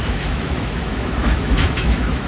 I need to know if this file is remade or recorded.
remade